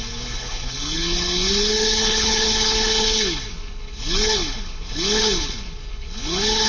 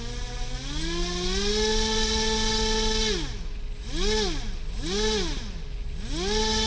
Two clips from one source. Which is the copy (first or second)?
first